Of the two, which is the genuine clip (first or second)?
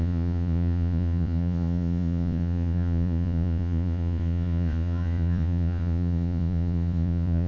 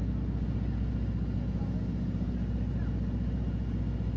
second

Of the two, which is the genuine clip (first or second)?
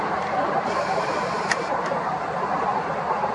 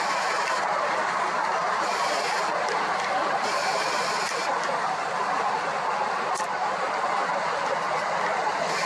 second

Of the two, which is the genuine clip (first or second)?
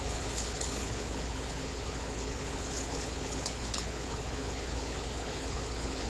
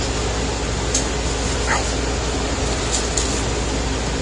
second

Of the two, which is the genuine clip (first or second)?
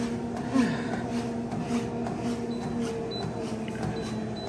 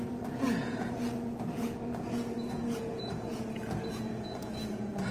first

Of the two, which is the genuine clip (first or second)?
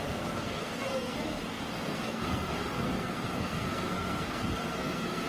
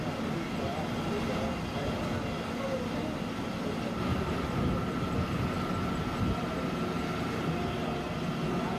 second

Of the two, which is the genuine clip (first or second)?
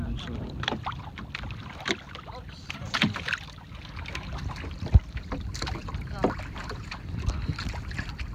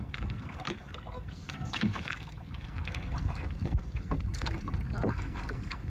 first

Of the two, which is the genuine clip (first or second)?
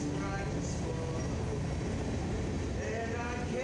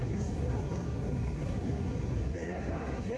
first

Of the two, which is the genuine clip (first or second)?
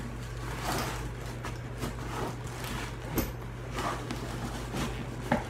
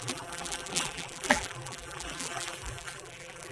first